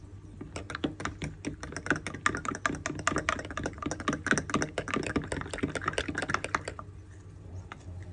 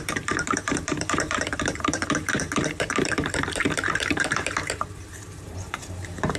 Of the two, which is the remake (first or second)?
second